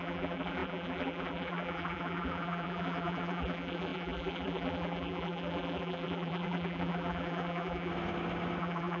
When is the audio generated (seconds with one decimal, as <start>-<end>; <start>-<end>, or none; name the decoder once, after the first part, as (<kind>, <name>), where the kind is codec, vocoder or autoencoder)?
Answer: 0.0-7.9 (vocoder, BigVGAN v2); 8.6-9.0

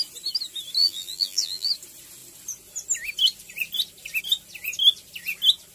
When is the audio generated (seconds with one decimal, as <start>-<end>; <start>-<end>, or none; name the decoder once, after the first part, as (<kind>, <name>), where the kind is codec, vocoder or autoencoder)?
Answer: 0.8-1.7 (vocoder, BigVGAN v2)